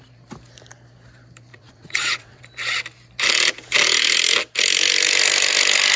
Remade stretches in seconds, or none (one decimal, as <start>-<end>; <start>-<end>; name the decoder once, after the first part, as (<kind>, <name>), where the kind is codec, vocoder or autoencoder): 1.5-2.4 (vocoder, WaveNeXt)